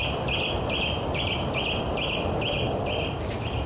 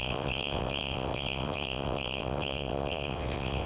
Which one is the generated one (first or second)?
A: second